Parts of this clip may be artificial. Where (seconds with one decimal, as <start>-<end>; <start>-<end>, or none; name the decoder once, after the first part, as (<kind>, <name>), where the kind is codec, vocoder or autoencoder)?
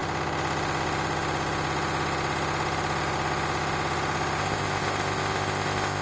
4.4-6.0 (codec, ZipCodec)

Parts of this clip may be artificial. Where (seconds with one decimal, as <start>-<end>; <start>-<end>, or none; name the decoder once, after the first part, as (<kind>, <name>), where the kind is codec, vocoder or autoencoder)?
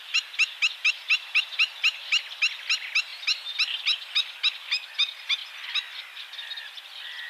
none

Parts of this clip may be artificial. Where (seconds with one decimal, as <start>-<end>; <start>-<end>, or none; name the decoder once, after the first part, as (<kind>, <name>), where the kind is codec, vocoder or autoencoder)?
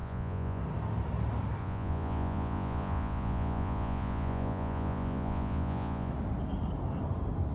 0.0-0.6 (vocoder, Vocos); 1.6-6.1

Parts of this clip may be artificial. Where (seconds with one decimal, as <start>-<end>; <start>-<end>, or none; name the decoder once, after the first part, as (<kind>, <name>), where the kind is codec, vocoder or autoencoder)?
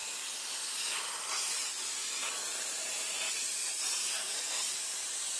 4.0-4.8 (codec, SNAC)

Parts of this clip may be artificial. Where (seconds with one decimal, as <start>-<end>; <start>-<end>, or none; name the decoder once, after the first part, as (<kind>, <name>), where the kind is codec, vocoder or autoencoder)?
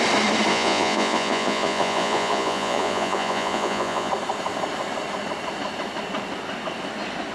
0.5-4.1 (vocoder, Vocos)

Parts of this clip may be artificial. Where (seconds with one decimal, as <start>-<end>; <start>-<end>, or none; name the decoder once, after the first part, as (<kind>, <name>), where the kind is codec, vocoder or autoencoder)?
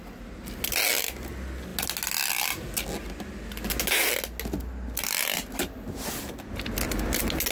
none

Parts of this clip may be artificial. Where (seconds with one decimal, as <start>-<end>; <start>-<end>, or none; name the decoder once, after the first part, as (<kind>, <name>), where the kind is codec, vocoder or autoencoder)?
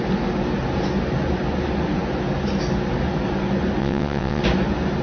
3.8-4.4 (vocoder, WaveNeXt)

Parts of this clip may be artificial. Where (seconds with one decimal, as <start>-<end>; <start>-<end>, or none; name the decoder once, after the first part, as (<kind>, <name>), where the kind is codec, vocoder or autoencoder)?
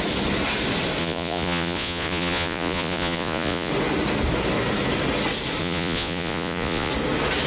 1.0-3.7 (vocoder, Vocos); 5.6-6.9